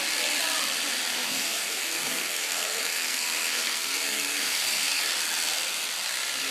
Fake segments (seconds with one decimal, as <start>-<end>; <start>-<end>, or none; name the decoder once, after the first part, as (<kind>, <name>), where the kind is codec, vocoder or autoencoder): 1.1-5.0 (codec, SNAC)